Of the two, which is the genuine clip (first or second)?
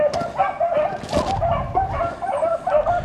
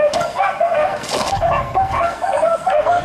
first